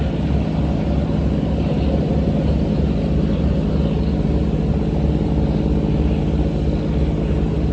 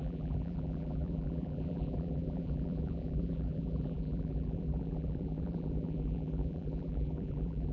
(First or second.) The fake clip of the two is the second